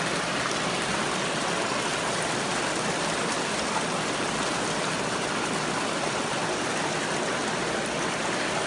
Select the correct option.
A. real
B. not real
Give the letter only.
A